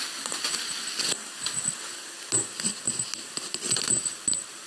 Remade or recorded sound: recorded